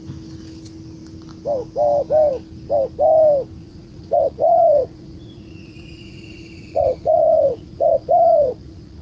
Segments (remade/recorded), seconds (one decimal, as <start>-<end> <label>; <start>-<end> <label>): 0.0-3.6 recorded; 3.6-9.0 remade